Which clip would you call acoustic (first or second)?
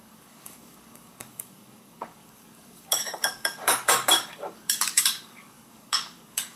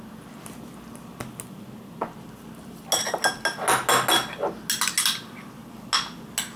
second